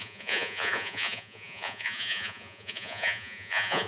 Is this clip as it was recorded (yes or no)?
no